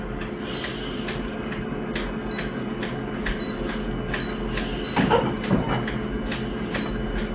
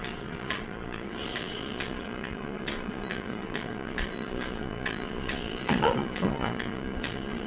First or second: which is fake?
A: second